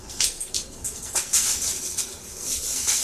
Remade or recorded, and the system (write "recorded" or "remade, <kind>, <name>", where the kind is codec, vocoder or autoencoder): remade, codec, SNAC